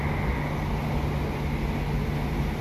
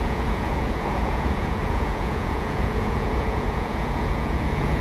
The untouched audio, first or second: first